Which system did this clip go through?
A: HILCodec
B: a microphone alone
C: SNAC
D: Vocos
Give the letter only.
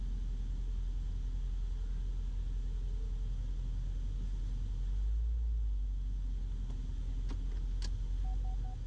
B